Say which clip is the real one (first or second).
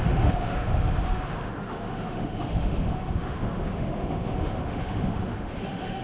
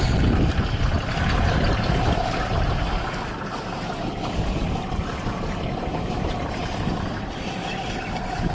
second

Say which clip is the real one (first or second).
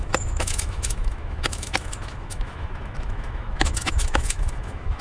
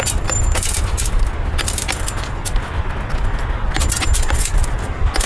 second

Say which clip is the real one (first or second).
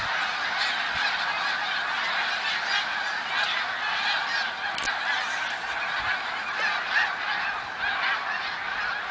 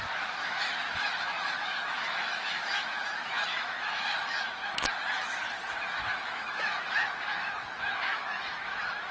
first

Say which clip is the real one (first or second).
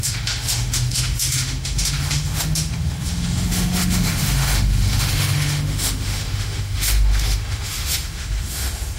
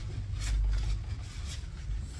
second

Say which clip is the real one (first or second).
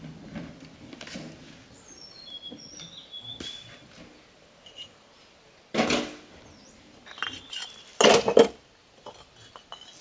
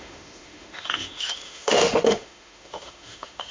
first